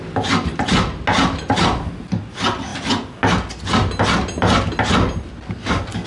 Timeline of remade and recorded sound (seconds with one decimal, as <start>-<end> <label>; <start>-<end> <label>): 0.0-6.1 recorded